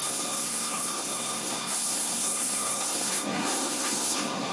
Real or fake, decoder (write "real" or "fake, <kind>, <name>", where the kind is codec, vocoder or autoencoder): fake, codec, SNAC